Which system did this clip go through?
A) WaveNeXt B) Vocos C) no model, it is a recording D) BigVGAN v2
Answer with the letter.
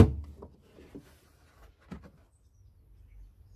C